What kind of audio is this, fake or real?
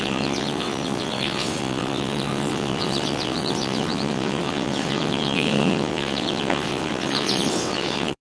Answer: fake